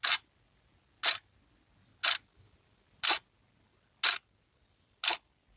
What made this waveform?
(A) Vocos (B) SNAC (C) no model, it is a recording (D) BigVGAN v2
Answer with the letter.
C